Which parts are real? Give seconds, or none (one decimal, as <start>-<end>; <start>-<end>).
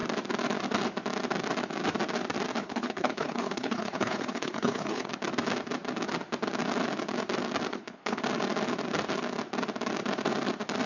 0.0-2.6; 5.1-7.7; 8.2-10.9